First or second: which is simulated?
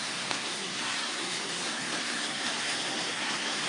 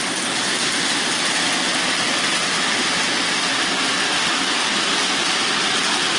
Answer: first